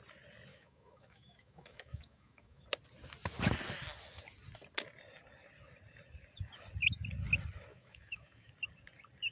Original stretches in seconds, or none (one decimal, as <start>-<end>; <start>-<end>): 0.0-0.5; 2.6-7.7; 8.5-9.3